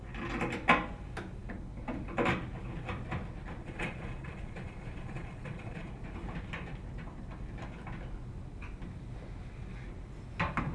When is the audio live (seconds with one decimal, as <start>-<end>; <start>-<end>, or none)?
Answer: 0.0-3.6; 5.9-10.7